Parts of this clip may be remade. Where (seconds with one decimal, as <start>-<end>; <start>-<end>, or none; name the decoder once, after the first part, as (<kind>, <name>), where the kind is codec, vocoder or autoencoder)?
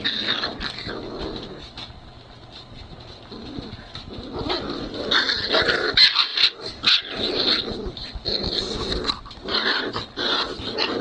none